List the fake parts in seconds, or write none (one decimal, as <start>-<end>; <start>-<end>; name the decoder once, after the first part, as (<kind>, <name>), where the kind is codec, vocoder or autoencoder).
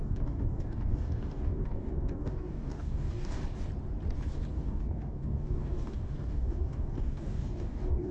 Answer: 0.0-3.4 (codec, DAC); 4.5-8.1